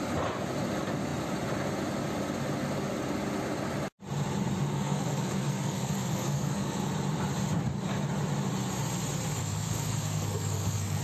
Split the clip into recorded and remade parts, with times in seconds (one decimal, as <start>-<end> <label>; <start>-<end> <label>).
0.0-4.7 recorded; 4.7-6.9 remade; 6.9-9.4 recorded; 9.4-11.0 remade